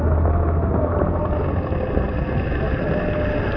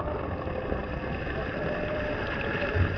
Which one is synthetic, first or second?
second